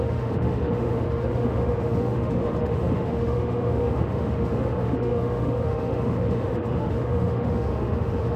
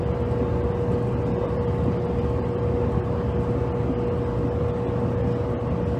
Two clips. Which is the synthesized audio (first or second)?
first